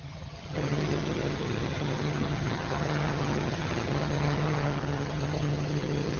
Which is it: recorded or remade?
remade